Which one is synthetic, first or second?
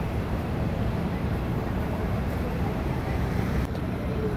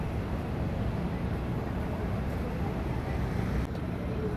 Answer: first